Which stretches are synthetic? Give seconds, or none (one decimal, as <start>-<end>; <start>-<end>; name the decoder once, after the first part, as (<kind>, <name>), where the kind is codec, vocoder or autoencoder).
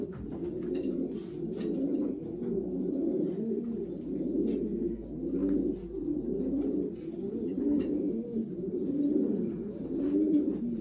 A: 6.0-6.5 (vocoder, BigVGAN v2); 8.4-10.8